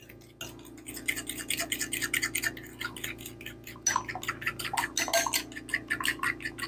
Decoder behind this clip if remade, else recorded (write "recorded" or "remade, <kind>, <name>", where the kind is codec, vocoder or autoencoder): recorded